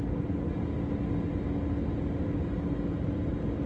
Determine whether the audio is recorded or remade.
recorded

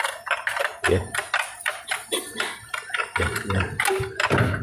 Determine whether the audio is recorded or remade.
recorded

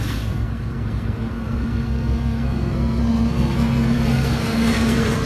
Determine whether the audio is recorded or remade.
remade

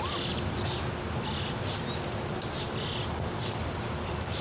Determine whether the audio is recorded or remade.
recorded